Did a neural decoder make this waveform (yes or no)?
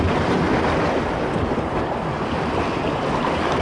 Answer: no